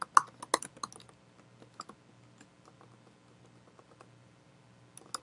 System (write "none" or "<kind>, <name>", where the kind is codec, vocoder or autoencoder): none